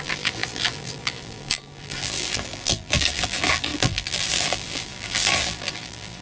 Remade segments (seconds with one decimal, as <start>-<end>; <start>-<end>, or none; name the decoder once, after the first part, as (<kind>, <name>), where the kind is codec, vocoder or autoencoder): 0.0-6.2 (vocoder, BigVGAN v2)